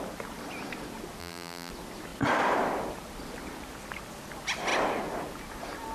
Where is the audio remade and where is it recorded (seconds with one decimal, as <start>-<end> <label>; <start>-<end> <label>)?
0.0-1.2 recorded; 1.2-1.7 remade; 1.7-5.9 recorded